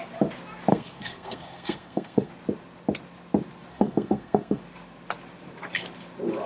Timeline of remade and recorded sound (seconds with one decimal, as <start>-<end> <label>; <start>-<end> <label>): 0.0-0.7 recorded; 0.7-2.3 remade; 2.3-3.7 recorded; 3.7-4.6 remade; 4.6-6.5 recorded